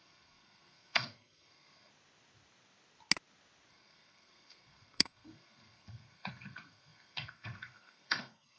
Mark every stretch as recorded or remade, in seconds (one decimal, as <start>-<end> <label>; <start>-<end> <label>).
0.0-1.9 remade; 1.9-3.7 recorded; 3.7-8.6 remade